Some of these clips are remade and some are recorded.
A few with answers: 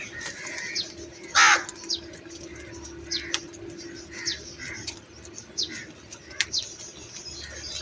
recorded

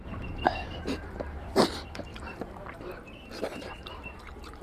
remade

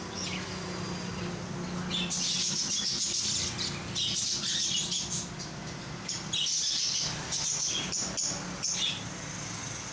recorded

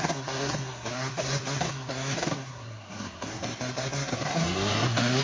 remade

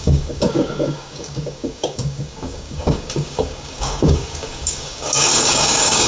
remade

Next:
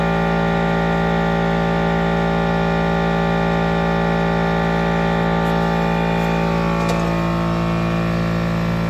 recorded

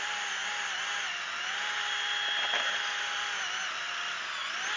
recorded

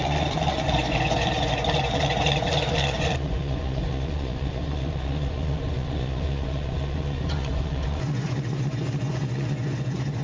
remade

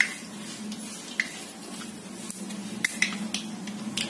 recorded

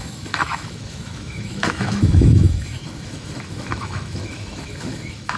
remade